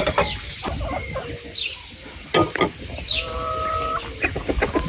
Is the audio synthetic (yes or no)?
no